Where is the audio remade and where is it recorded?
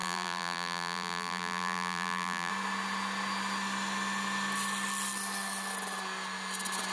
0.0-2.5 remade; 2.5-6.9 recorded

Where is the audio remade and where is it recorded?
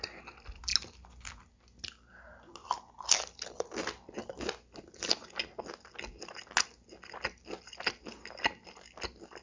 0.0-9.4 recorded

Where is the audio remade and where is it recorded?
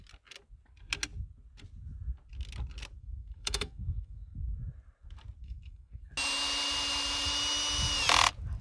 0.0-3.0 recorded; 3.0-4.4 remade; 4.4-5.4 recorded; 5.4-6.0 remade; 6.0-8.6 recorded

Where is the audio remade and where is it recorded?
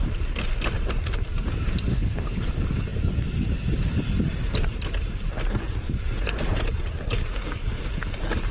0.0-1.9 recorded; 1.9-2.5 remade; 2.5-8.5 recorded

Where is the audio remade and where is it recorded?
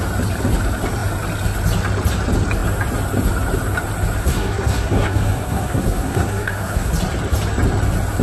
0.0-4.2 recorded; 4.2-6.9 remade; 6.9-8.2 recorded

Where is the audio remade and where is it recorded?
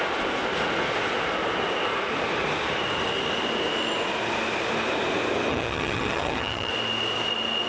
0.0-5.5 recorded; 5.5-6.7 remade; 6.7-7.7 recorded